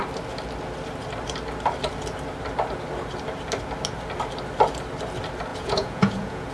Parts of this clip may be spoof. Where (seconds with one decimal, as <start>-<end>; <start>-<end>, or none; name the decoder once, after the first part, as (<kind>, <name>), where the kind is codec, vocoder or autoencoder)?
5.5-6.5 (vocoder, Vocos)